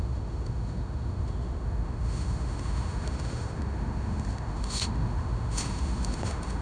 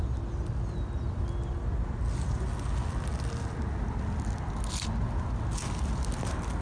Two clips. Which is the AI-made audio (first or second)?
first